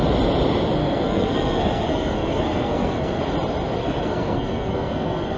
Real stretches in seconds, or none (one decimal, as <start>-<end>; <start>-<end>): 0.0-0.8; 3.2-3.8